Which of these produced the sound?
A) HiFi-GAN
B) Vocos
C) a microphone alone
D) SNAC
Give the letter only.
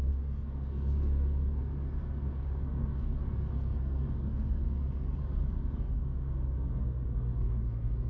D